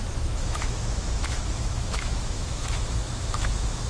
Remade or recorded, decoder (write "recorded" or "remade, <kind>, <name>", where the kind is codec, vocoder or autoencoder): remade, autoencoder, DAC-VAE